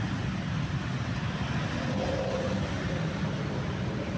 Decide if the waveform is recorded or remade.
recorded